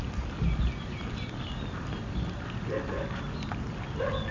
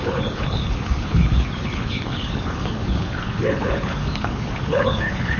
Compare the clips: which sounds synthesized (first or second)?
second